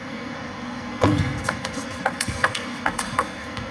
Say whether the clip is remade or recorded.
remade